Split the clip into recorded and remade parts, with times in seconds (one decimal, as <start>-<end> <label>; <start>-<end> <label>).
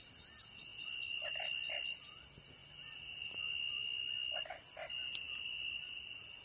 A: 0.0-6.4 recorded